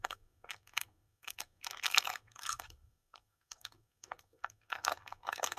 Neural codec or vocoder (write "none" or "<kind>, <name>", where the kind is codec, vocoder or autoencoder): codec, SNAC